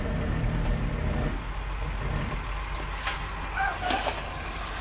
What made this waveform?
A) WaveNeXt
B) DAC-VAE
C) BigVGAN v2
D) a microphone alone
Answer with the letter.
D